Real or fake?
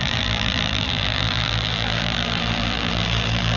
fake